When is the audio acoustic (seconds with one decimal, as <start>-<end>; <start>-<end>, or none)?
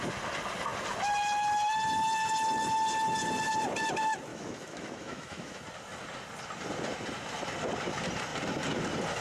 0.0-4.3; 5.6-9.2